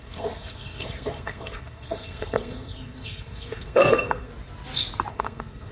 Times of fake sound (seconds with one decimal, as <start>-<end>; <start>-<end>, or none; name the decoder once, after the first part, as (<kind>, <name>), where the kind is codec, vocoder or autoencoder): 0.0-4.3 (codec, SNAC); 5.1-5.7